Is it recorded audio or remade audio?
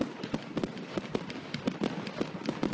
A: recorded